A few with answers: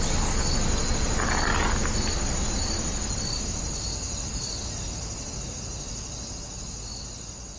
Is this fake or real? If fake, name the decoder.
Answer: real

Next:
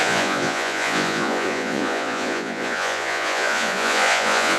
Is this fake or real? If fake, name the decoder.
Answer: fake, vocoder, Vocos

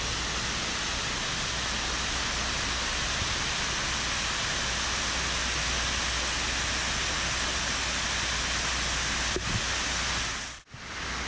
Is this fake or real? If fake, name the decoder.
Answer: real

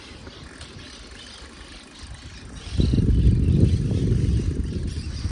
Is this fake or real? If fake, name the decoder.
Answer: real